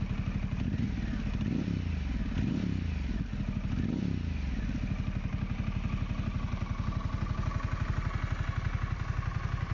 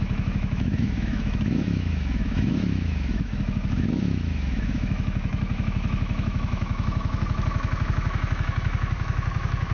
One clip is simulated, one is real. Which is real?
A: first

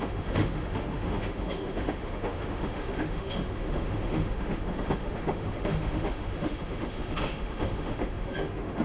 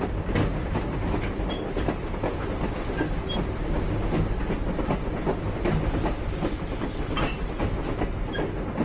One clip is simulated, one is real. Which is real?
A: second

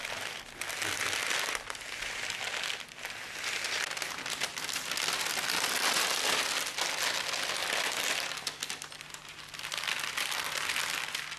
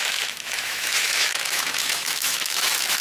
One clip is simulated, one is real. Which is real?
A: first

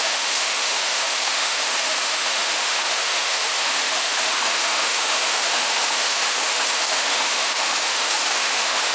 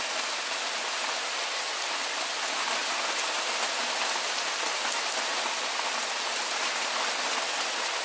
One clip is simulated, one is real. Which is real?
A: second